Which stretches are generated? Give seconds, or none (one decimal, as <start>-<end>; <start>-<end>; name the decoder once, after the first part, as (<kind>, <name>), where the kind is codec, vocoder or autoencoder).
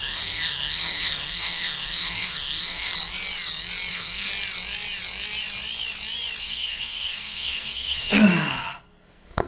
0.0-2.9 (codec, SNAC); 3.9-4.3; 6.4-9.5